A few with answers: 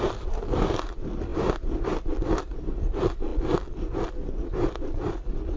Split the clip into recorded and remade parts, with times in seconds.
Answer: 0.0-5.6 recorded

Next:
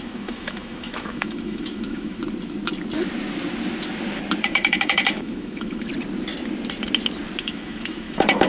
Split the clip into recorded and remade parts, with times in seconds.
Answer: 0.0-2.2 remade; 2.2-4.4 recorded; 4.4-5.9 remade; 5.9-7.4 recorded; 7.4-8.5 remade

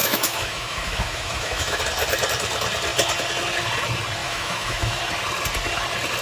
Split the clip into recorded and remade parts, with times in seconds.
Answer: 0.0-1.8 remade; 1.8-4.2 recorded; 4.2-5.0 remade; 5.0-6.2 recorded

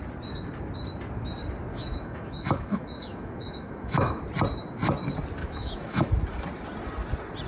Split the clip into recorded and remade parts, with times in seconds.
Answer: 0.0-1.7 recorded; 1.7-4.2 remade; 4.2-5.4 recorded; 5.4-6.1 remade; 6.1-7.5 recorded

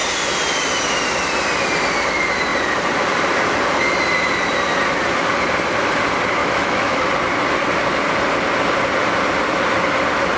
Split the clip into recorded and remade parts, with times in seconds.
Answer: 0.0-6.4 recorded; 6.4-7.1 remade; 7.1-10.4 recorded

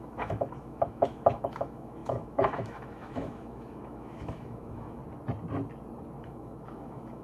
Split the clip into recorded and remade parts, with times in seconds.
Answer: 0.0-5.0 remade; 5.0-6.2 recorded; 6.2-7.2 remade

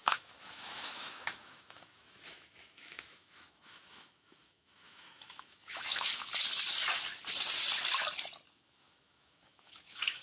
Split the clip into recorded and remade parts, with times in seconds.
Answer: 0.0-6.3 remade; 6.3-8.5 recorded; 8.5-10.2 remade